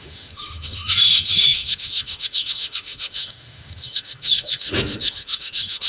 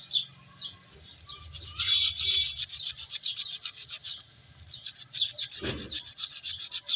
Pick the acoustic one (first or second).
second